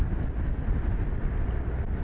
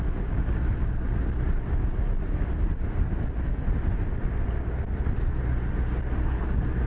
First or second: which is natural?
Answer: second